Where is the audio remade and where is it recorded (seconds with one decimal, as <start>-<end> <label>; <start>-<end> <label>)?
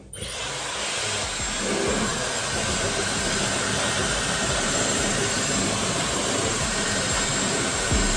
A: 0.0-4.0 recorded; 4.0-7.3 remade; 7.3-8.2 recorded